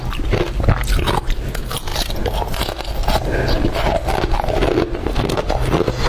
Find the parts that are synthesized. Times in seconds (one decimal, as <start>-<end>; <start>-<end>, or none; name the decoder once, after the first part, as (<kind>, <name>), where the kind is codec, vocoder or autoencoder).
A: 5.0-5.5 (codec, SNAC)